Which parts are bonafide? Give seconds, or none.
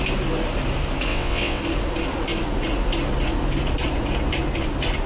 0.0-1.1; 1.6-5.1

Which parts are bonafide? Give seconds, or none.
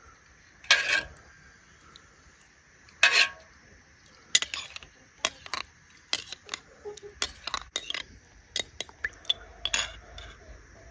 0.0-10.9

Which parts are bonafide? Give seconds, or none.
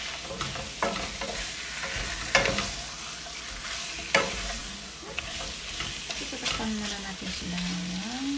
0.0-8.4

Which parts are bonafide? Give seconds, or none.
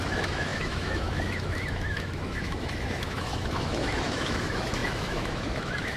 none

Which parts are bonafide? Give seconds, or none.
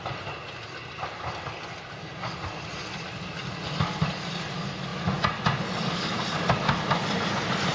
0.0-7.7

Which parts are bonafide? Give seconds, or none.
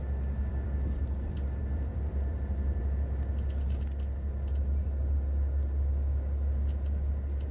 0.0-0.4; 1.2-1.6; 2.8-7.5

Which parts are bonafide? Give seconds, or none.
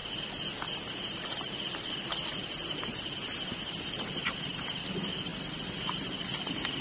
0.0-4.1; 5.3-6.8